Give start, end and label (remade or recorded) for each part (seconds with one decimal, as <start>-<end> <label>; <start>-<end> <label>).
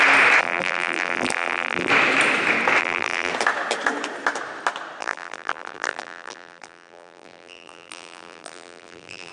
0.0-0.4 recorded; 0.4-1.9 remade; 1.9-2.8 recorded; 2.8-3.3 remade; 3.3-5.0 recorded; 5.0-9.3 remade